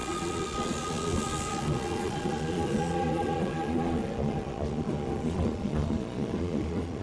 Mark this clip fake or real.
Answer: fake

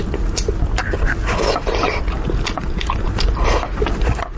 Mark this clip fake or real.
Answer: real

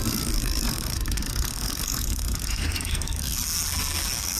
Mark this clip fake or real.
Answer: fake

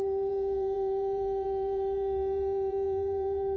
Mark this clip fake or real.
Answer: fake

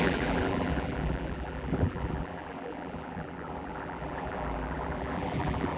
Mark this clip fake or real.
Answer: fake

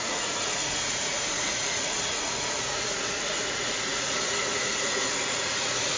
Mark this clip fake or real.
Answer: fake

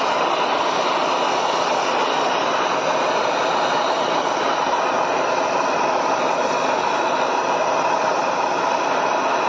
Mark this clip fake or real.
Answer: real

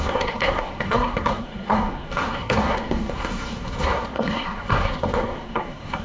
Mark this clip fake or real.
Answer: fake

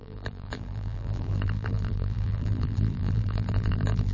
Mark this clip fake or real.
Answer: fake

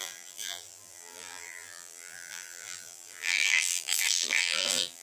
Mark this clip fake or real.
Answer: fake